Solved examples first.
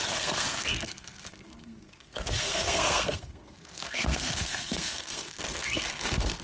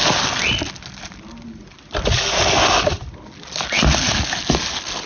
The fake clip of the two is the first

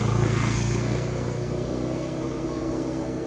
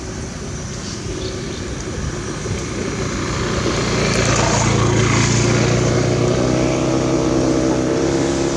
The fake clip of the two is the first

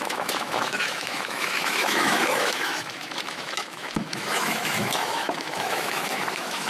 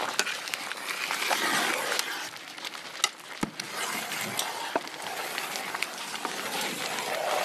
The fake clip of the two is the first